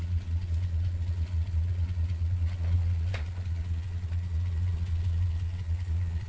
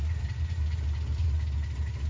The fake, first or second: first